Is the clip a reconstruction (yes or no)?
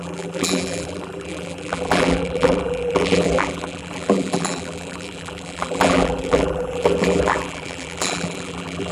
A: yes